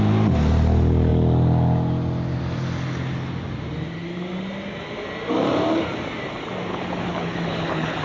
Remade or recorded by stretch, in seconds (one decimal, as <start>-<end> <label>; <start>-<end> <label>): 0.0-6.7 recorded; 6.7-8.0 remade